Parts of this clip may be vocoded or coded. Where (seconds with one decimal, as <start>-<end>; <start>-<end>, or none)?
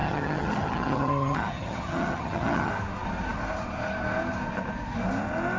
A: 0.0-2.7